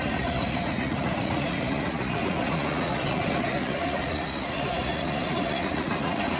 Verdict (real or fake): fake